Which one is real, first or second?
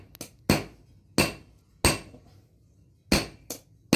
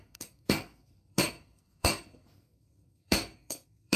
first